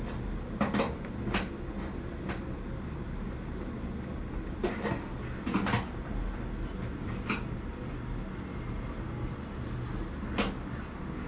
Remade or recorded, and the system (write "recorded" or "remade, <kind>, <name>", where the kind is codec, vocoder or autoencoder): recorded